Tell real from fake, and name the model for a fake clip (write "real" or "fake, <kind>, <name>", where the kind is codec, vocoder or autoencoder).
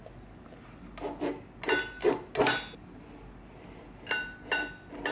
real